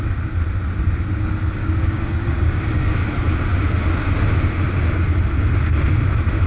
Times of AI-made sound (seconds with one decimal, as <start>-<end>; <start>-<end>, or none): 1.6-2.9